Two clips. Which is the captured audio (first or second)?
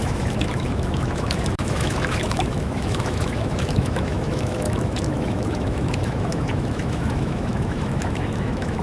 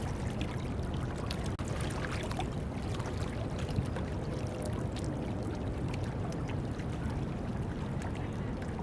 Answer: second